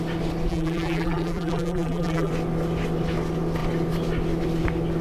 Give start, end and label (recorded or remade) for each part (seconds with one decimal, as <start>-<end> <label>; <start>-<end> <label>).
0.0-0.5 recorded; 0.5-2.3 remade; 2.3-5.0 recorded